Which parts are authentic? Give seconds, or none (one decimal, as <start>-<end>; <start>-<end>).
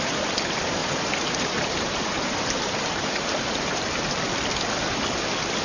0.0-0.8; 3.8-5.6